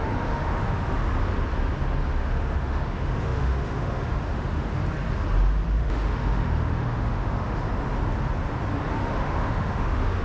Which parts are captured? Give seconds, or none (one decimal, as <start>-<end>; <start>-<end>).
1.0-2.2; 4.8-5.8; 7.6-8.9